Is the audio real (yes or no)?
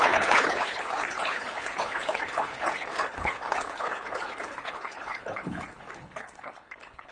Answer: no